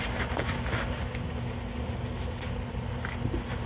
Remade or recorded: recorded